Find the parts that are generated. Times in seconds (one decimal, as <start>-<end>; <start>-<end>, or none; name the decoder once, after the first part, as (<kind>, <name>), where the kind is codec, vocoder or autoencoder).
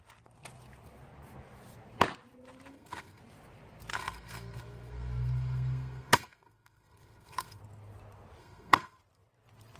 2.7-3.2 (codec, SNAC); 3.9-7.6; 8.4-9.0